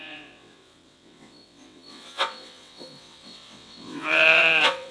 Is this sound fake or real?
fake